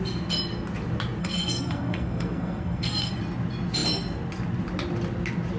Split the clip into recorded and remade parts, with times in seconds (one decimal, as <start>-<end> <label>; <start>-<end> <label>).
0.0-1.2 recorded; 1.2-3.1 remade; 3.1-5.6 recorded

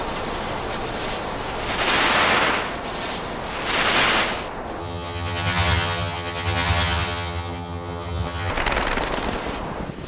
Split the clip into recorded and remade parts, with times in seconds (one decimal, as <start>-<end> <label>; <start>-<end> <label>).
0.0-4.8 recorded; 4.8-8.5 remade; 8.5-10.1 recorded

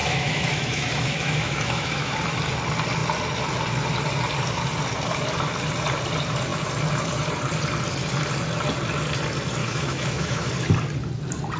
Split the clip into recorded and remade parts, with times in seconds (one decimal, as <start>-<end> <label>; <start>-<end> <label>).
0.0-2.1 remade; 2.1-9.6 recorded; 9.6-10.5 remade; 10.5-11.6 recorded

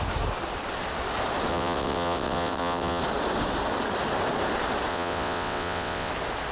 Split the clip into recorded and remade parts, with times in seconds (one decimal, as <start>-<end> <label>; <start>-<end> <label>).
0.0-1.5 recorded; 1.5-3.0 remade; 3.0-4.9 recorded; 4.9-6.1 remade; 6.1-6.5 recorded

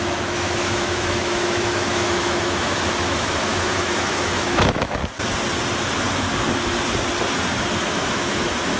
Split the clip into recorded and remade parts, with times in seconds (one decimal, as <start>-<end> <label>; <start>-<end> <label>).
0.0-5.0 remade; 5.0-7.8 recorded; 7.8-8.8 remade

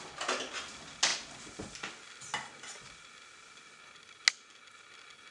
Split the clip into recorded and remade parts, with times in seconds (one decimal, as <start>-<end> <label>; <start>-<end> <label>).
0.0-5.3 recorded

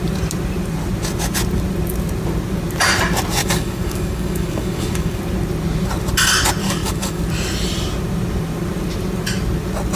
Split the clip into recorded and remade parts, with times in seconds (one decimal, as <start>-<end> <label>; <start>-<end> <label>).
0.0-3.4 recorded; 3.4-5.2 remade; 5.2-6.6 recorded; 6.6-7.2 remade; 7.2-10.0 recorded

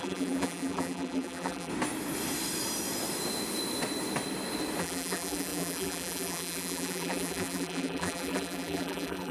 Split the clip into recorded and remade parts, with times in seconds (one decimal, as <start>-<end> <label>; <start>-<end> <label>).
0.0-1.7 remade; 1.7-4.8 recorded; 4.8-9.3 remade